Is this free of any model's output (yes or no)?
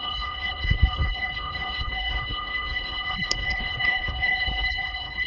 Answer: no